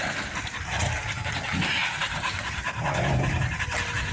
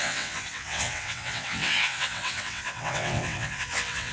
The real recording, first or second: first